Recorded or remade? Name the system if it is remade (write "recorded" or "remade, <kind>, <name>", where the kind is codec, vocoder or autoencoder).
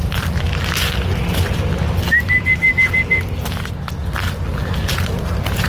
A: recorded